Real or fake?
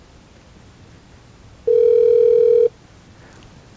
real